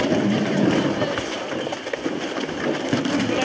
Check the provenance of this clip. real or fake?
real